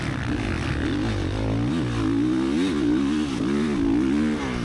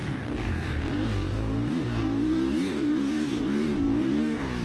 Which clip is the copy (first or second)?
second